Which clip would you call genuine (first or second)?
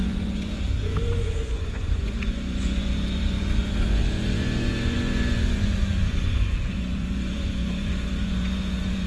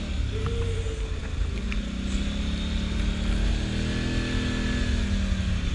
second